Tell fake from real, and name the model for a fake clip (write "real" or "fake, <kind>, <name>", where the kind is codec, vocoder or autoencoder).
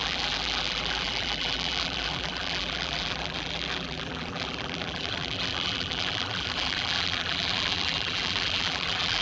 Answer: fake, vocoder, BigVGAN v2